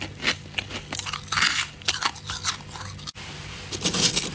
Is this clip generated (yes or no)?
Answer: no